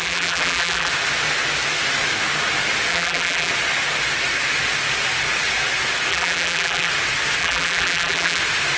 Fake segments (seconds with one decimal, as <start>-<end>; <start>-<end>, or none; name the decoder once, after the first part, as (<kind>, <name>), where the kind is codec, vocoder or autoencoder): 0.0-0.9 (vocoder, BigVGAN v2); 2.9-3.5; 6.1-6.9; 7.4-8.4